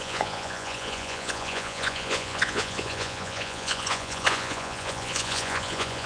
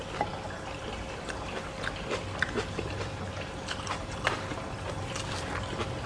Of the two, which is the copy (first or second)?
first